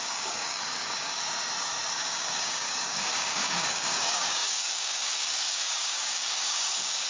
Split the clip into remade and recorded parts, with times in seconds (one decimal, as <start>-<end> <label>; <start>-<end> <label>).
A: 0.0-1.2 remade; 1.2-1.9 recorded; 1.9-7.1 remade